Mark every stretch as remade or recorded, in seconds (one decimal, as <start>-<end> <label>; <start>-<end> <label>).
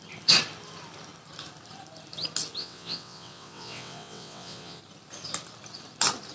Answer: 0.0-2.6 recorded; 2.6-4.8 remade; 4.8-6.3 recorded